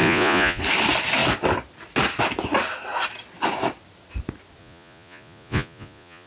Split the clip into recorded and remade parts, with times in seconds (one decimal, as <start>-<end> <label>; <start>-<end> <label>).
0.0-0.6 remade; 0.6-4.6 recorded; 4.6-6.3 remade